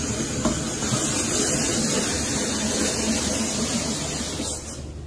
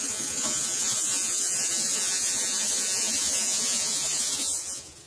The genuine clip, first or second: first